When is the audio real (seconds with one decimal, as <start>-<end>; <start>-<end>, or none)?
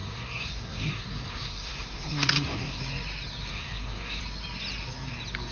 2.8-3.5; 4.2-5.5